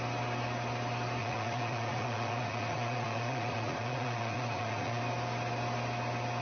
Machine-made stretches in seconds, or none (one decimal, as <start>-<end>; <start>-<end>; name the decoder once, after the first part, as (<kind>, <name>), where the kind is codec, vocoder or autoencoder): 1.2-5.0 (vocoder, Vocos)